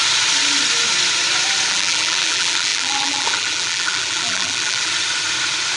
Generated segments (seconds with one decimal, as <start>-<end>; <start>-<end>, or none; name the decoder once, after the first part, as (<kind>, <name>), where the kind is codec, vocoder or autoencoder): 1.7-4.9 (vocoder, BigVGAN v2)